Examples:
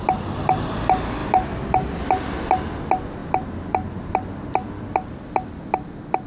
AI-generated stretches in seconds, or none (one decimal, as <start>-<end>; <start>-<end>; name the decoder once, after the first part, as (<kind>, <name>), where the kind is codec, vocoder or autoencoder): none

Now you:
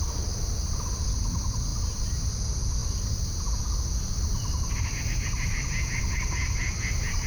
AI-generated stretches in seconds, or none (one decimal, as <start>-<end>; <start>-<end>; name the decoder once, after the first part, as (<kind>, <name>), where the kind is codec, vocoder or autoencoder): 1.7-2.3 (vocoder, BigVGAN v2); 2.8-3.6; 4.0-6.0

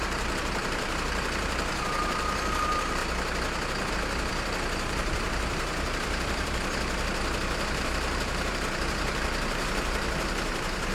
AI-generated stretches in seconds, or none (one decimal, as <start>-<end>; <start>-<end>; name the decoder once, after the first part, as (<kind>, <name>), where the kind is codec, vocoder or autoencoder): 0.0-3.0 (vocoder, BigVGAN v2); 3.9-10.9